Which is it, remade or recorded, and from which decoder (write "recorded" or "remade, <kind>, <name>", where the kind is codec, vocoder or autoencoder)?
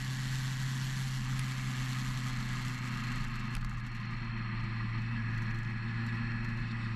recorded